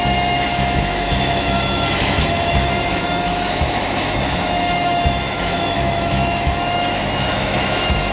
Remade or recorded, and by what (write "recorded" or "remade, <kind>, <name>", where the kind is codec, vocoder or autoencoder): remade, autoencoder, DAC-VAE